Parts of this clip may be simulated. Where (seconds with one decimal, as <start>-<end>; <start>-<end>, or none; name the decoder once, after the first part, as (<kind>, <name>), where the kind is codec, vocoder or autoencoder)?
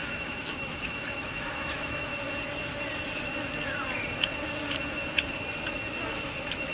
0.0-2.1 (autoencoder, DAC-VAE); 6.1-6.7